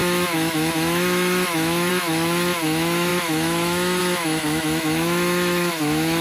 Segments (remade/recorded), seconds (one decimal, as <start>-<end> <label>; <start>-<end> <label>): 0.0-6.2 remade